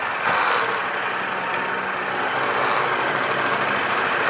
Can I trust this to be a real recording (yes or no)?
yes